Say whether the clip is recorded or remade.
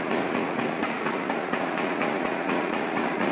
remade